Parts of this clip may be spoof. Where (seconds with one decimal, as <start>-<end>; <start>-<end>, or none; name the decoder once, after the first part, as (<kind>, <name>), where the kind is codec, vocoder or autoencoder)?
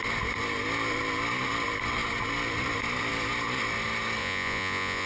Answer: 4.2-5.1 (vocoder, Vocos)